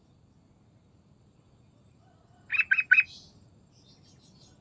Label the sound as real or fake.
real